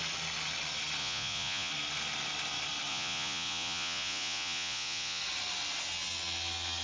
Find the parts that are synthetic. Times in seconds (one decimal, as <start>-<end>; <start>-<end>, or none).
1.0-1.7; 2.9-5.2